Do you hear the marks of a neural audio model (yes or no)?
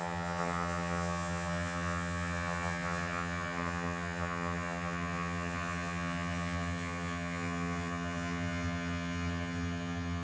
yes